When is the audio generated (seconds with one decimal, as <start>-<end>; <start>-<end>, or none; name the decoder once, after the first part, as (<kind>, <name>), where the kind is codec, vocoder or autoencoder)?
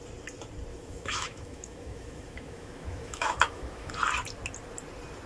0.7-3.9 (autoencoder, DAC-VAE)